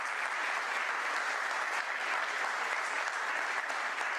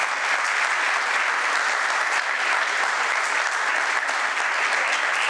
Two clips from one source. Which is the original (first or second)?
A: second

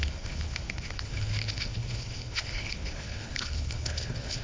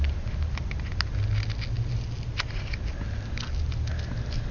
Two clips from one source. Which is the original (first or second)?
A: second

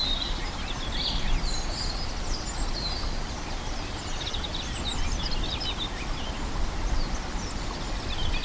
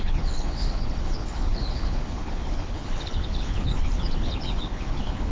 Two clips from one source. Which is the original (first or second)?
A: first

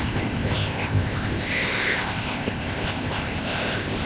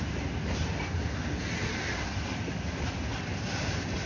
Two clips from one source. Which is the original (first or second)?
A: second